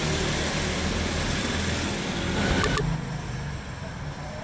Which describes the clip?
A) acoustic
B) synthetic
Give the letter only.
A